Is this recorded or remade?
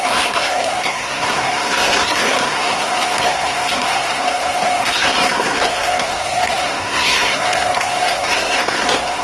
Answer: remade